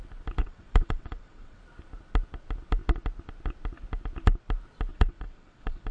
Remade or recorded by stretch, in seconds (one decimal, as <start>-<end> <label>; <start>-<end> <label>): 0.0-0.4 recorded; 0.4-1.6 remade; 1.6-4.9 recorded; 4.9-5.9 remade